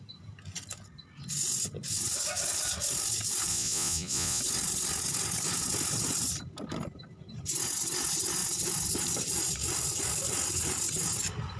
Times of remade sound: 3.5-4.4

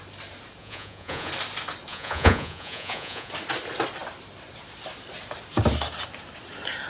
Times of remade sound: 0.6-1.3; 1.9-3.3

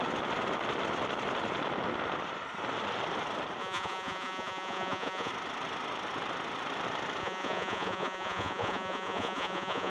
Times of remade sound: 3.6-5.3; 7.2-9.9

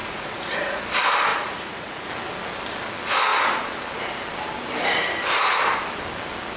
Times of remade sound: 0.0-0.8; 1.3-2.1

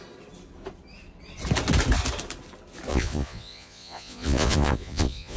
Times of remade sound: 2.9-5.4

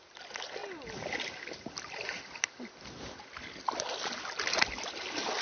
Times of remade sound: none